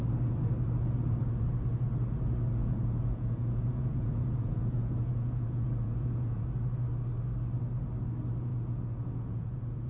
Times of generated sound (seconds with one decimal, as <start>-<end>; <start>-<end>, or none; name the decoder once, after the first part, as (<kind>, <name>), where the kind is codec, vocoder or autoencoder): 2.6-6.4 (vocoder, Vocos); 8.5-9.9